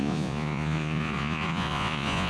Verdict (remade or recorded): remade